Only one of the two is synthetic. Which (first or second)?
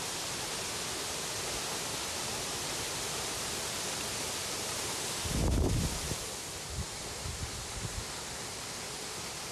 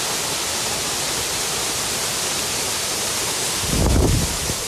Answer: first